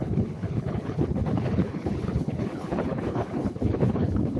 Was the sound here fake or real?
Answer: fake